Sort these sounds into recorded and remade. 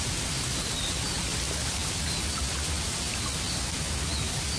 recorded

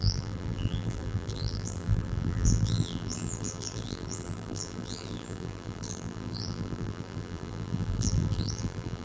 remade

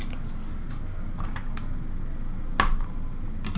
recorded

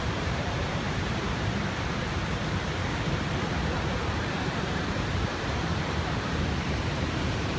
remade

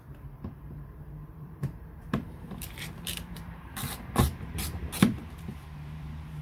remade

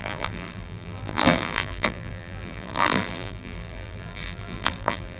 remade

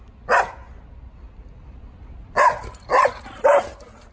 recorded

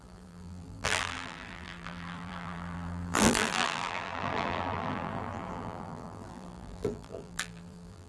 remade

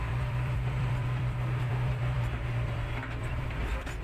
remade